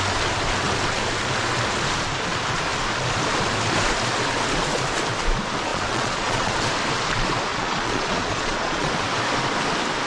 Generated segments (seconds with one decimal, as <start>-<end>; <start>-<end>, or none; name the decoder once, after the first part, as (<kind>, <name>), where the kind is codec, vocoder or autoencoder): 5.7-6.6 (vocoder, Vocos); 7.5-8.9